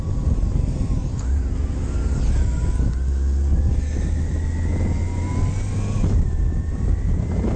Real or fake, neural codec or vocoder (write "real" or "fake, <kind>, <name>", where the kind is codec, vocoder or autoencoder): real